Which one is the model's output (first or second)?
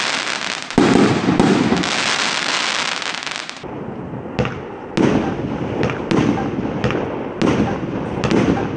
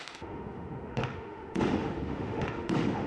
second